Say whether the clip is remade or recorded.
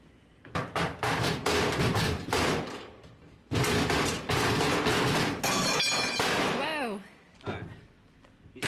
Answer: recorded